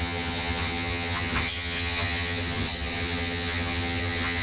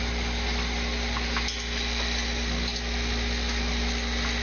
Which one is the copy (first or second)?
first